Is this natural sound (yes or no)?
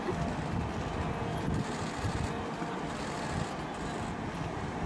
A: yes